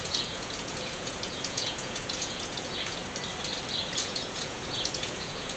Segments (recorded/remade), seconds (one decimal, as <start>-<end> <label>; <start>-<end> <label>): 0.0-3.0 remade; 3.0-3.8 recorded; 3.8-5.6 remade

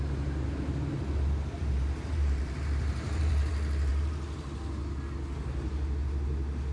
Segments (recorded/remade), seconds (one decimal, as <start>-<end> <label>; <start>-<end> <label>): 0.0-1.6 recorded; 1.6-3.5 remade; 3.5-3.9 recorded; 3.9-4.4 remade; 4.4-6.7 recorded

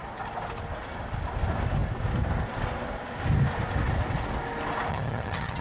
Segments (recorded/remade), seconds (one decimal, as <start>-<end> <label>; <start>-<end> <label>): 0.0-4.9 recorded; 4.9-5.6 remade

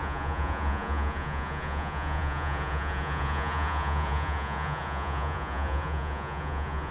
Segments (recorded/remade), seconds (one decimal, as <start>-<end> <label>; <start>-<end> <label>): 0.0-6.9 remade

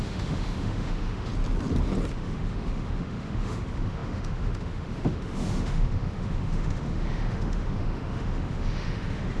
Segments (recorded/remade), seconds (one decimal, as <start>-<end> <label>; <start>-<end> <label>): 0.0-1.3 remade; 1.3-2.1 recorded; 2.1-9.4 remade

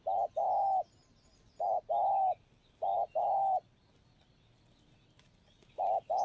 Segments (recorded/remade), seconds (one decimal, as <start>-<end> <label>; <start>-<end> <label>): 0.0-6.2 recorded

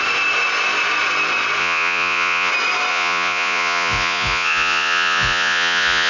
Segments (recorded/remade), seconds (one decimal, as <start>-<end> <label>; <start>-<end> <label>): 0.0-1.6 recorded; 1.6-2.5 remade; 2.5-2.9 recorded; 2.9-6.1 remade

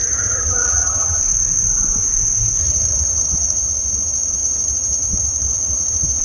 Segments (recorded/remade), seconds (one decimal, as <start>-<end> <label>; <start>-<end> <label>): 0.0-1.2 remade; 1.2-2.6 recorded; 2.6-6.2 remade